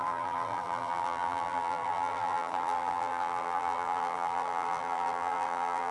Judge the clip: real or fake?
fake